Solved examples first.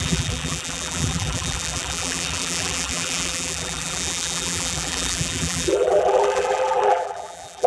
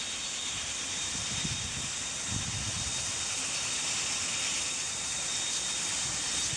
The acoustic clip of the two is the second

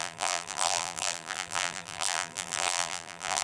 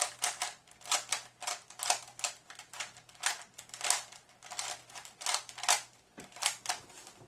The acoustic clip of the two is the second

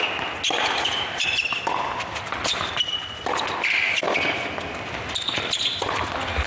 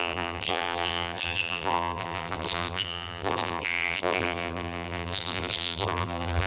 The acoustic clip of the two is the first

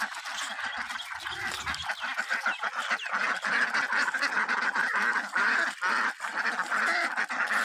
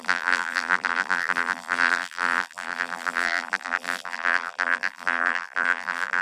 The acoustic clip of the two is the first